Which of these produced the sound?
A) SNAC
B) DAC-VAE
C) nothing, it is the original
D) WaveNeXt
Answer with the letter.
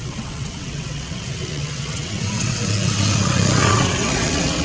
D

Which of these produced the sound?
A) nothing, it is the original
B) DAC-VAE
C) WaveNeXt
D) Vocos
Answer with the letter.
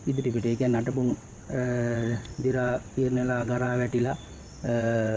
C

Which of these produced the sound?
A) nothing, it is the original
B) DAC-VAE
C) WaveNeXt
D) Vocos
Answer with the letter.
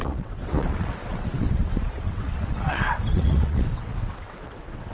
C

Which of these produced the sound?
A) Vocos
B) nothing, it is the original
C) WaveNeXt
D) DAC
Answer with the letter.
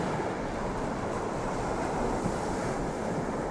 B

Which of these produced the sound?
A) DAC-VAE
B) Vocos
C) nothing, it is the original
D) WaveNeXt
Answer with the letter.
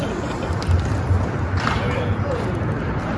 C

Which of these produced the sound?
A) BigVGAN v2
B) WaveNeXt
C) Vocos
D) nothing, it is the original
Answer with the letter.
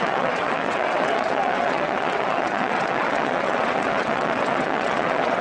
B